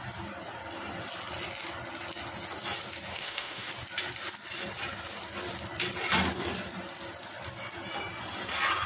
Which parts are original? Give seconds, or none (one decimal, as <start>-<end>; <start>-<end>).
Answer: 0.0-3.1; 3.7-8.9